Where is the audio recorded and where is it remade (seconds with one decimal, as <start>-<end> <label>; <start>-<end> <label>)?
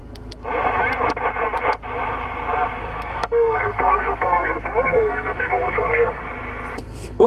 0.0-2.8 recorded; 2.8-6.2 remade; 6.2-6.8 recorded; 6.8-7.3 remade